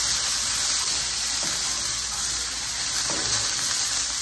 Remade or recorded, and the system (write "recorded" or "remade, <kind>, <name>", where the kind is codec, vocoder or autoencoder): recorded